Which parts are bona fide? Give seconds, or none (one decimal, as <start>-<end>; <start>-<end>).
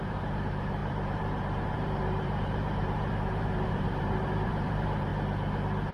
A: 5.1-5.9